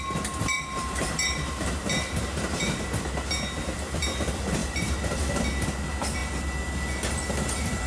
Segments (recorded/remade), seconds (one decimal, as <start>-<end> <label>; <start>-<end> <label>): 0.0-0.4 recorded; 0.4-1.5 remade; 1.5-4.6 recorded; 4.6-5.3 remade; 5.3-7.9 recorded